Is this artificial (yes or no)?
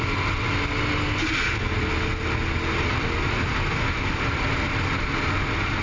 no